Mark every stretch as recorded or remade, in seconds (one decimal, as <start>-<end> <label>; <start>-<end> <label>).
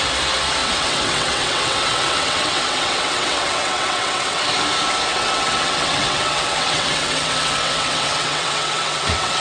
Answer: 0.0-0.6 recorded; 0.6-4.4 remade; 4.4-5.1 recorded; 5.1-9.4 remade